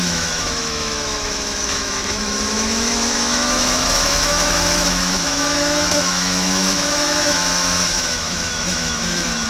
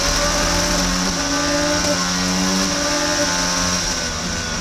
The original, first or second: second